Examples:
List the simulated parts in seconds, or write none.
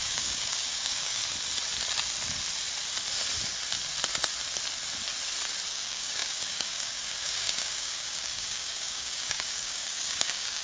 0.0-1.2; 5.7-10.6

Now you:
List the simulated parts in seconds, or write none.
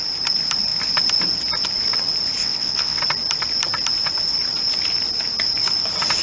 2.4-3.0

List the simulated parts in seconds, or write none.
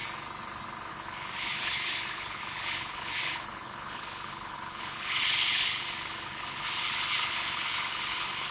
0.9-8.5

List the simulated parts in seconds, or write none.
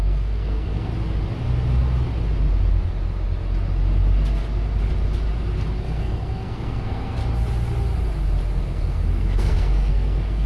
0.0-0.9; 5.8-7.2; 8.5-10.5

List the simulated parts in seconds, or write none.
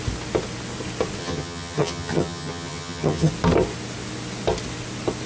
1.2-3.3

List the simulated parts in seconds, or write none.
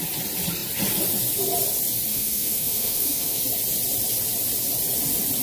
2.1-3.4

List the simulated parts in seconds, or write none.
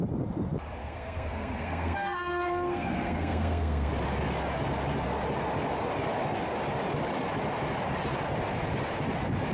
0.8-3.9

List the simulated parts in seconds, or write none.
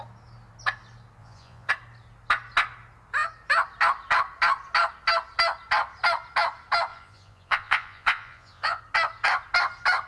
1.2-1.7; 6.9-8.8